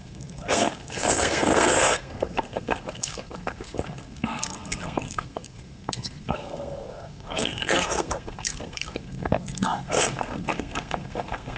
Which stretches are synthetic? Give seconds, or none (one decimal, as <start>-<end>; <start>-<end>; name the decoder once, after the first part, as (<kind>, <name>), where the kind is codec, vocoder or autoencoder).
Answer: 0.0-11.6 (codec, SNAC)